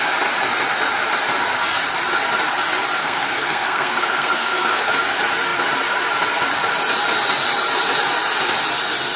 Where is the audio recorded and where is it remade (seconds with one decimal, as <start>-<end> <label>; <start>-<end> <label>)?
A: 0.0-3.0 recorded; 3.0-4.9 remade; 4.9-9.2 recorded